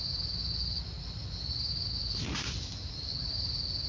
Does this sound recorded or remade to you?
recorded